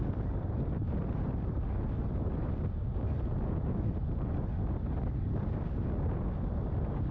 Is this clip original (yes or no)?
yes